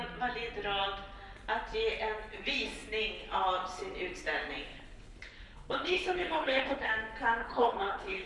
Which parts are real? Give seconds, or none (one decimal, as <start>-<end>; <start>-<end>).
0.0-4.7; 6.9-7.4